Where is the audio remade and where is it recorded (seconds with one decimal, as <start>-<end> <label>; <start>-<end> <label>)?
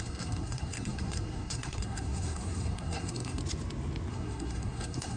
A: 0.0-3.4 remade; 3.4-4.1 recorded; 4.1-5.2 remade